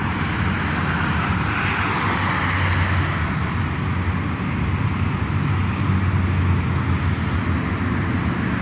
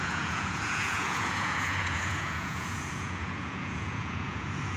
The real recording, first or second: first